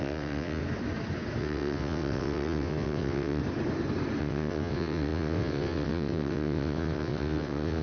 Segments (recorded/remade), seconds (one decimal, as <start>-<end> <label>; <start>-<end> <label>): 0.0-0.6 remade; 0.6-1.4 recorded; 1.4-3.4 remade; 3.4-4.2 recorded; 4.2-7.8 remade